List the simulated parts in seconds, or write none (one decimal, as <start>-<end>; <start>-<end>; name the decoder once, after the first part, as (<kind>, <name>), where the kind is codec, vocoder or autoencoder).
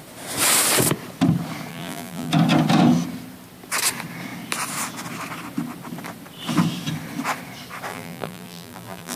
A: 1.7-2.3 (vocoder, BigVGAN v2); 7.9-9.2